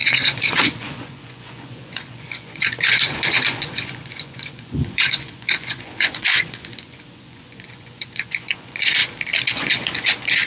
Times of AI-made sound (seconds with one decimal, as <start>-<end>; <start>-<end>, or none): 0.0-9.0; 9.5-10.5